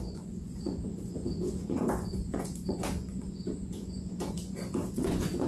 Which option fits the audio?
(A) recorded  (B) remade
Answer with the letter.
B